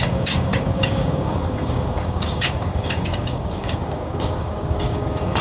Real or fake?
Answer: fake